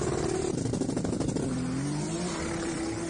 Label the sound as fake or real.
real